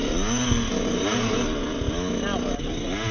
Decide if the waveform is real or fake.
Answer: real